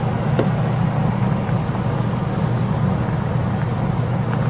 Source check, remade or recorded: recorded